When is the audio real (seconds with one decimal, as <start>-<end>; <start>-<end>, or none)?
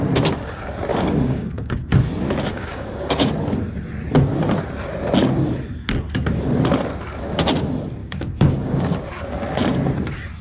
0.0-0.9; 1.8-2.5; 3.3-8.0; 8.8-10.4